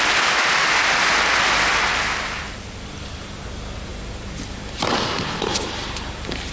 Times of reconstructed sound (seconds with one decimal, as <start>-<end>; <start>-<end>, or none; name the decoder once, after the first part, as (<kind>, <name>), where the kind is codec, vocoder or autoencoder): none